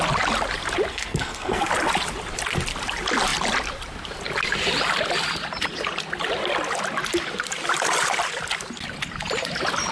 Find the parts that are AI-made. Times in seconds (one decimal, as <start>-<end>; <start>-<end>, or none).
0.9-1.7